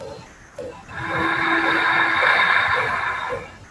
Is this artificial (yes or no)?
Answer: no